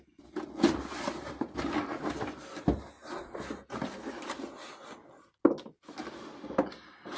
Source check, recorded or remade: recorded